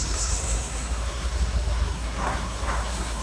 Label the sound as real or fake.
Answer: fake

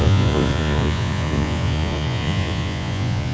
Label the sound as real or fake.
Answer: fake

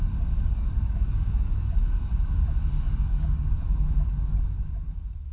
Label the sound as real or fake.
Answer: fake